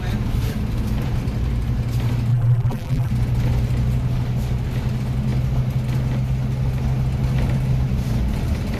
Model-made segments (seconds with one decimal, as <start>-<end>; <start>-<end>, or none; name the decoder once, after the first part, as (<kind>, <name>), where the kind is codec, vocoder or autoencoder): 2.3-3.1 (vocoder, BigVGAN v2)